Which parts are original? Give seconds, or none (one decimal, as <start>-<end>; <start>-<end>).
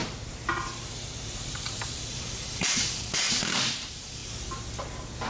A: 4.2-5.3